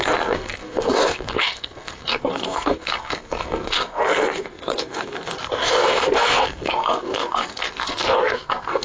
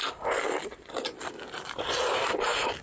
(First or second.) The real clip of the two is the second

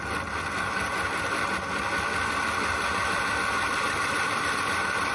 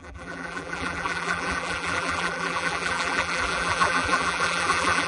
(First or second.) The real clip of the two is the first